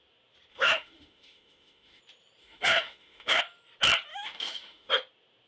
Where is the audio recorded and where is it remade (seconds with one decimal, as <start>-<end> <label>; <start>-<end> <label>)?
0.0-0.5 recorded; 0.5-2.0 remade; 2.0-2.4 recorded; 2.4-3.4 remade; 3.4-4.1 recorded; 4.1-4.9 remade; 4.9-5.5 recorded